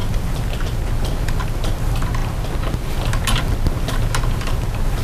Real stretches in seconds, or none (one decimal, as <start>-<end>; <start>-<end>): 0.0-5.0